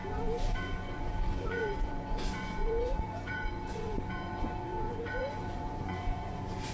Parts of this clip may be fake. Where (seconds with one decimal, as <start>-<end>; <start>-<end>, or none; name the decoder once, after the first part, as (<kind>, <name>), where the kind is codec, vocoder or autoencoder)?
0.0-6.7 (vocoder, Vocos)